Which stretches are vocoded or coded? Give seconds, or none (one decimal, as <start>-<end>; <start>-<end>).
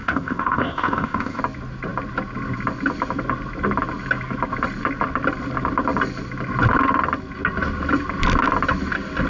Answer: 0.0-1.4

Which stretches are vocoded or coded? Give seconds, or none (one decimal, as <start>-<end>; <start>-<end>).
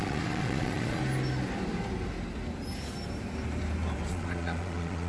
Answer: 0.0-1.0; 4.1-5.1